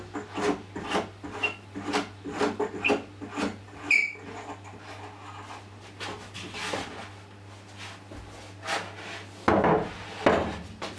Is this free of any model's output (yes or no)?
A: yes